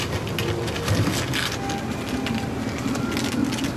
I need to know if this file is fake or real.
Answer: real